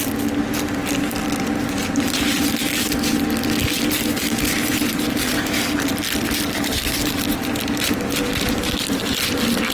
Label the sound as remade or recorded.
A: recorded